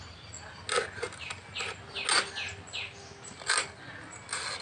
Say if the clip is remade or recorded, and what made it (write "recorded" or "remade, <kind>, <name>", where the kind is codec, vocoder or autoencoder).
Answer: recorded